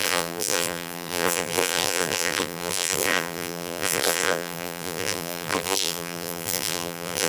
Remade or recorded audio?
remade